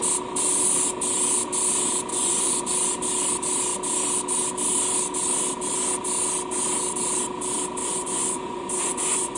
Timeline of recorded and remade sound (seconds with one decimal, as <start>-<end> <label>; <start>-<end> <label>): 0.0-2.1 recorded; 2.1-2.7 remade; 2.7-7.8 recorded; 7.8-9.4 remade

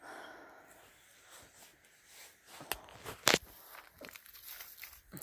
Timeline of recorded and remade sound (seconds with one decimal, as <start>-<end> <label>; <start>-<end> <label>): 0.0-5.2 recorded

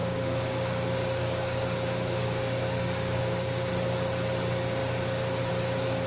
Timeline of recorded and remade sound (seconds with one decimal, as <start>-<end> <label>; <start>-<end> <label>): 0.0-3.7 remade; 3.7-6.1 recorded

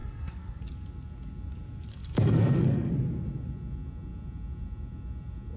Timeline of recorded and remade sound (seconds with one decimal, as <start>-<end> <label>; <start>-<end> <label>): 0.0-0.6 remade; 0.6-1.9 recorded; 1.9-2.9 remade; 2.9-5.6 recorded

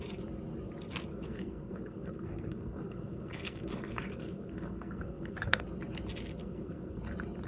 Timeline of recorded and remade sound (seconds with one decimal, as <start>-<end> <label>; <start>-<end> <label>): 0.0-1.1 recorded; 1.1-5.6 remade; 5.6-6.4 recorded; 6.4-7.0 remade; 7.0-7.5 recorded

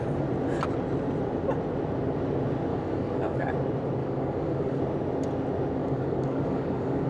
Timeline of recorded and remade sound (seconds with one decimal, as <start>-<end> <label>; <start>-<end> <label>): 0.0-2.7 recorded; 2.7-3.5 remade; 3.5-4.0 recorded; 4.0-4.8 remade; 4.8-5.8 recorded; 5.8-7.1 remade